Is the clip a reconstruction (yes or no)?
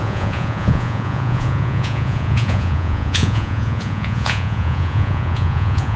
yes